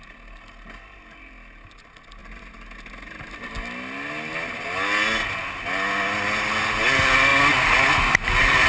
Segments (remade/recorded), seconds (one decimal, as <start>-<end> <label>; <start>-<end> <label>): 0.0-8.7 recorded